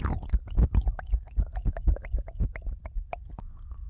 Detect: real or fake real